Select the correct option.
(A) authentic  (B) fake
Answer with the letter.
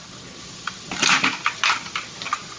A